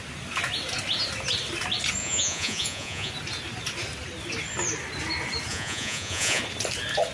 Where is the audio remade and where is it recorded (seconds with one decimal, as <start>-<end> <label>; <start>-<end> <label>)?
0.0-2.0 recorded; 2.0-3.1 remade; 3.1-5.5 recorded; 5.5-6.4 remade; 6.4-7.1 recorded